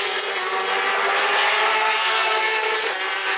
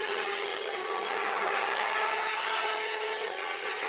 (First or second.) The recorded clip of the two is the first